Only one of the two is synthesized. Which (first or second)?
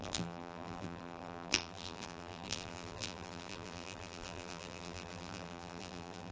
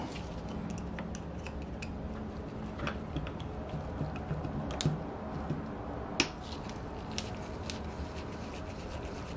first